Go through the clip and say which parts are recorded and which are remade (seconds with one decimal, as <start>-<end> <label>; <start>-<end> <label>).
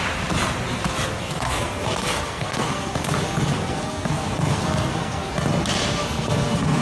0.0-1.2 recorded; 1.2-5.3 remade; 5.3-6.0 recorded; 6.0-6.8 remade